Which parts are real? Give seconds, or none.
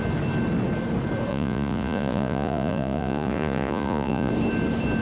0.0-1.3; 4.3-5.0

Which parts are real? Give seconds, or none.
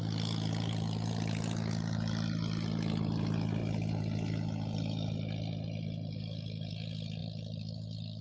0.0-8.2